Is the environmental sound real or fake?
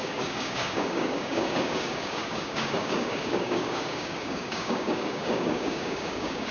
fake